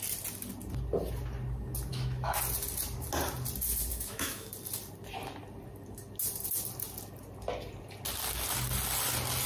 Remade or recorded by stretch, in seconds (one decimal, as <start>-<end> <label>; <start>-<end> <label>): 0.0-1.9 recorded; 1.9-2.4 remade; 2.4-3.9 recorded; 3.9-4.5 remade; 4.5-9.5 recorded